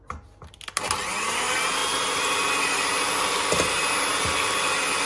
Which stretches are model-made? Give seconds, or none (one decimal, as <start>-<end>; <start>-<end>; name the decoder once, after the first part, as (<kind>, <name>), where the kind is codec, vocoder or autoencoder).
none